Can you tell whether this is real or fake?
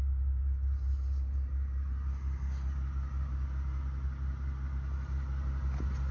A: real